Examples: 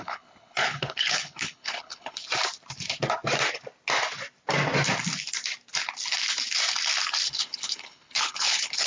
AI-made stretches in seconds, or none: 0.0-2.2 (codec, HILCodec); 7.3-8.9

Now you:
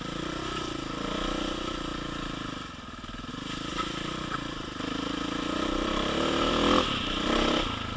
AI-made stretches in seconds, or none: 1.9-3.3 (vocoder, BigVGAN v2); 3.7-6.5

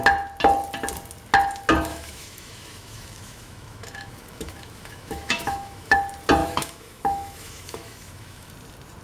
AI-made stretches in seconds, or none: 1.9-6.0 (autoencoder, DAC-VAE); 6.4-8.5

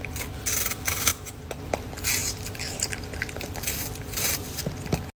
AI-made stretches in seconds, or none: 1.1-1.6 (vocoder, BigVGAN v2); 2.2-4.6

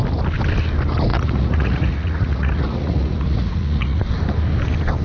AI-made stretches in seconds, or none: 1.1-4.1 (vocoder, Vocos)

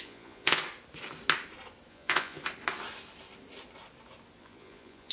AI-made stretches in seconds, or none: 0.0-0.6 (vocoder, Vocos); 1.9-2.4; 4.4-5.1

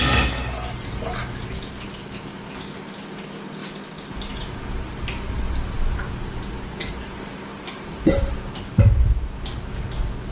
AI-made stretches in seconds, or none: none

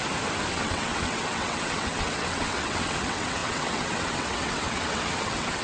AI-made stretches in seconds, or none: 0.5-5.6 (vocoder, WaveNeXt)